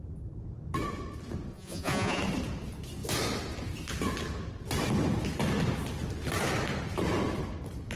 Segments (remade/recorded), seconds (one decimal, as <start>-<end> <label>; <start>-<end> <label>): 0.0-1.5 recorded; 1.5-2.2 remade; 2.2-8.0 recorded